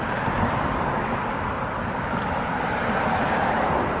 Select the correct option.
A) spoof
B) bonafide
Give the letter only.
B